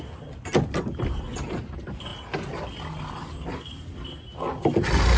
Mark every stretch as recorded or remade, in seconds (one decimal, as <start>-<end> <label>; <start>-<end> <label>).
0.0-5.2 recorded